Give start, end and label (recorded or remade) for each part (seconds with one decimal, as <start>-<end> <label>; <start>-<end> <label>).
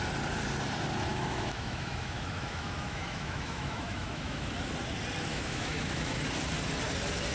0.0-1.1 recorded; 1.1-4.5 remade; 4.5-5.3 recorded; 5.3-6.2 remade; 6.2-7.3 recorded